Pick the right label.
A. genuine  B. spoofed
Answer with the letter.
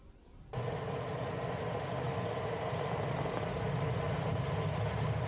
A